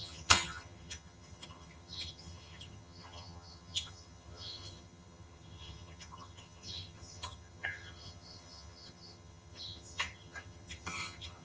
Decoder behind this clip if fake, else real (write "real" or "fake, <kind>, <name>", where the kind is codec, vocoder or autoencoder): fake, vocoder, HiFi-GAN